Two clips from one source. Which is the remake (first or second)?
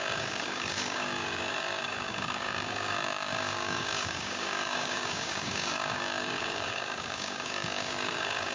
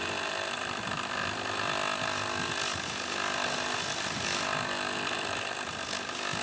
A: first